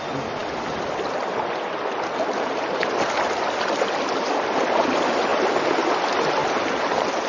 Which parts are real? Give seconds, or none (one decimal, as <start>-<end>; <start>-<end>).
0.0-6.4